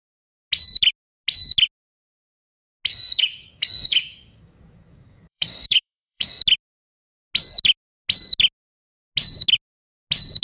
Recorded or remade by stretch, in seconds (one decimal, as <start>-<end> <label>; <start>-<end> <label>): 0.0-2.9 recorded; 2.9-6.4 remade; 6.4-10.4 recorded